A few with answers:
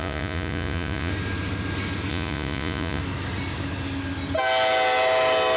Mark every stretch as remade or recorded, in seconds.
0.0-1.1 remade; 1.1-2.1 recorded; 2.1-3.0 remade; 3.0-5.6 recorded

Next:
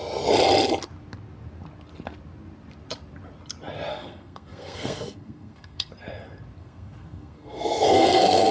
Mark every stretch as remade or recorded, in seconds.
0.0-3.9 recorded; 3.9-5.9 remade; 5.9-6.6 recorded; 6.6-8.5 remade

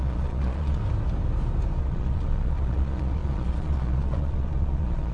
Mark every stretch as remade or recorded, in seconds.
0.0-0.8 remade; 0.8-1.8 recorded; 1.8-5.1 remade

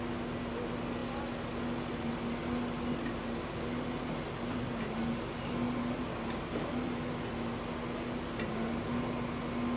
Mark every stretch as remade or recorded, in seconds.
0.0-9.8 recorded

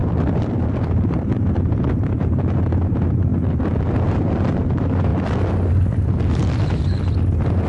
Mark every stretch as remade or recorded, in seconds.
0.0-0.6 recorded; 0.6-3.3 remade; 3.3-4.1 recorded; 4.1-5.1 remade; 5.1-5.7 recorded; 5.7-7.7 remade